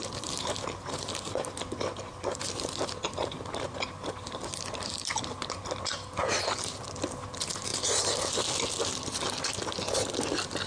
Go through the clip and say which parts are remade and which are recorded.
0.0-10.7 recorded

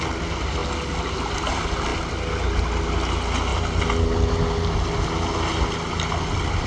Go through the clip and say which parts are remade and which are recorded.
0.0-6.7 recorded

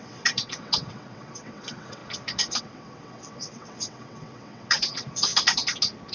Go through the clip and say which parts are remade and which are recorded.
0.0-2.0 remade; 2.0-2.6 recorded; 2.6-5.3 remade; 5.3-6.1 recorded

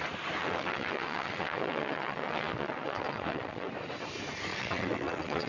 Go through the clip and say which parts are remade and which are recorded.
0.0-0.4 recorded; 0.4-3.7 remade; 3.7-4.5 recorded; 4.5-5.5 remade

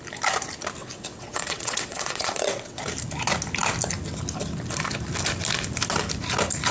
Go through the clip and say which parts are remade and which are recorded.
0.0-0.8 recorded; 0.8-2.8 remade; 2.8-6.7 recorded